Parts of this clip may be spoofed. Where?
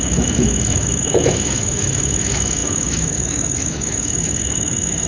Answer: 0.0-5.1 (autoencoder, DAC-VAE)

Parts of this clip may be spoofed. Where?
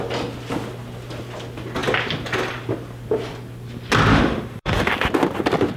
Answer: 4.1-4.9 (autoencoder, DAC-VAE)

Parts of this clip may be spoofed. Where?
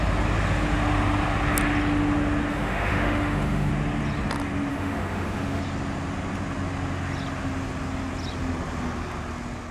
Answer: 2.5-3.7 (autoencoder, DAC-VAE); 4.7-5.6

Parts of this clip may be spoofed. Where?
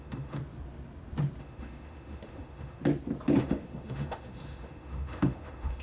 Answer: 0.0-0.4 (autoencoder, DAC-VAE); 1.4-2.8; 3.4-5.8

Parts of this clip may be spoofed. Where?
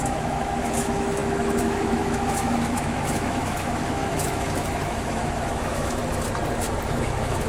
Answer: 0.0-6.0 (autoencoder, DAC-VAE); 6.9-7.5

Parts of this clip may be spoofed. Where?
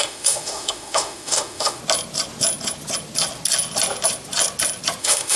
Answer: 0.0-1.8 (autoencoder, DAC-VAE); 5.0-5.4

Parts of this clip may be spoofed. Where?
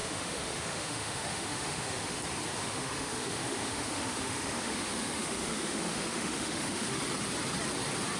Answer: 0.0-2.2 (autoencoder, DAC-VAE); 2.6-7.0